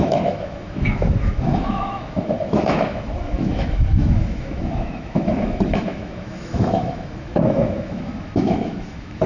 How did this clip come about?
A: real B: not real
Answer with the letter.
B